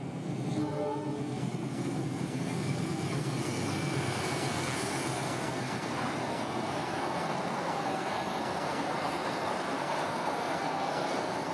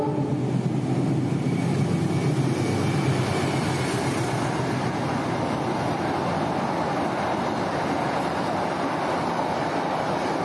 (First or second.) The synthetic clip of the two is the first